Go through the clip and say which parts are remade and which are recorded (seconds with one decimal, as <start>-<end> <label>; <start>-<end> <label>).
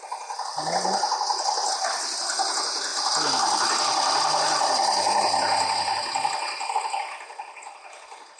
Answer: 0.0-8.4 recorded